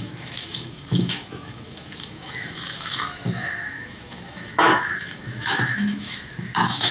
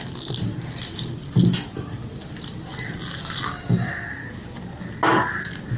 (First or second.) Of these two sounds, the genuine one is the second